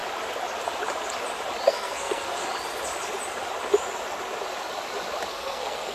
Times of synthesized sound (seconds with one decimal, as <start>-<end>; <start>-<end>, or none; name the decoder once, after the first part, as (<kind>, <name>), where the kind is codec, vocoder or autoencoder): 1.7-2.4 (codec, SNAC); 5.3-5.9